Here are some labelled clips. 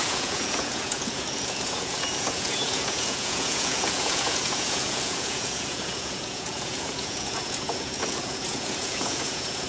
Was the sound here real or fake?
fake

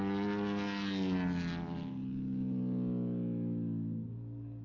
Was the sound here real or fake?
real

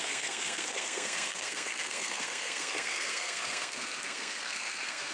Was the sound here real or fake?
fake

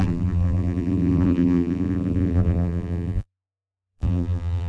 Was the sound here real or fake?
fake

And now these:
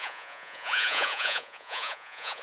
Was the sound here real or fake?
fake